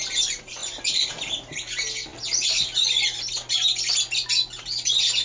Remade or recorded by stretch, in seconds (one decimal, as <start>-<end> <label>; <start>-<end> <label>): 0.0-5.2 recorded